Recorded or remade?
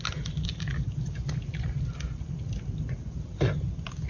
recorded